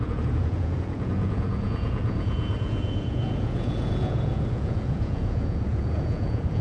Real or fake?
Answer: fake